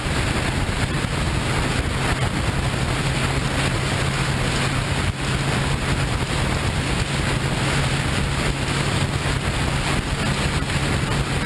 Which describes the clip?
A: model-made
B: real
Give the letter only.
B